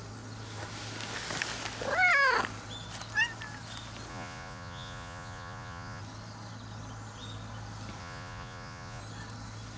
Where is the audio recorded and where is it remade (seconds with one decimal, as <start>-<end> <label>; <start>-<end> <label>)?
0.0-4.1 recorded; 4.1-6.0 remade; 6.0-8.0 recorded; 8.0-9.0 remade; 9.0-9.8 recorded